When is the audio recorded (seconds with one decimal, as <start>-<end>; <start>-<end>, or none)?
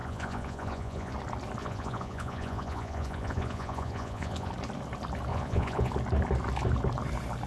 1.1-1.6; 4.5-5.3; 5.9-7.5